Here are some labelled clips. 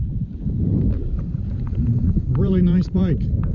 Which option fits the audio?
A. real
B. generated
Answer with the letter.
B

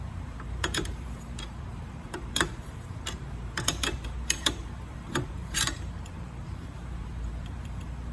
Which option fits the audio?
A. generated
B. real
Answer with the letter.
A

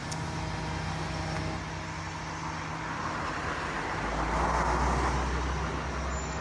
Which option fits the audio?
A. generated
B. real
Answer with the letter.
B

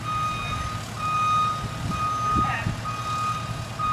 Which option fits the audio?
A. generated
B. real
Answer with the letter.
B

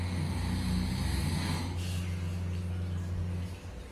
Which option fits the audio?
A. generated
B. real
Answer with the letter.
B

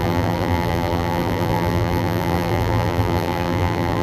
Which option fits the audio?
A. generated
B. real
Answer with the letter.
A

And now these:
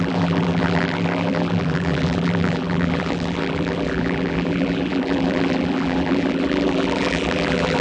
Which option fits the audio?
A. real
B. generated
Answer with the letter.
B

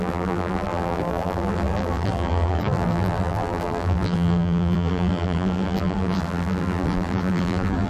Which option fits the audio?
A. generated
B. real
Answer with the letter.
A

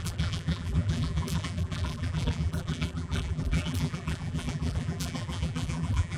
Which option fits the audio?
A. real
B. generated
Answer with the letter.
B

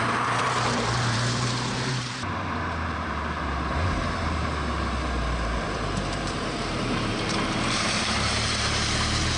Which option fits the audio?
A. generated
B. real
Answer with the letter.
A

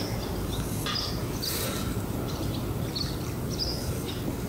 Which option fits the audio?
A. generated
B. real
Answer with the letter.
B